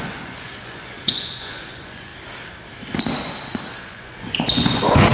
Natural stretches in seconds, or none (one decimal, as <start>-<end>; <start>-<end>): 2.1-3.7